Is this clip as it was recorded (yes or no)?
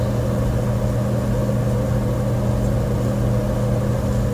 yes